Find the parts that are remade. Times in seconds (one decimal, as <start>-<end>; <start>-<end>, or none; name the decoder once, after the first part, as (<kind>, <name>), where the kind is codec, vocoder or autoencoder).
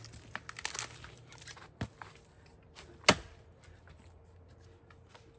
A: none